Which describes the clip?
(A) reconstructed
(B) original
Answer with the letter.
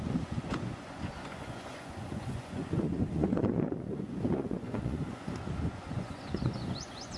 A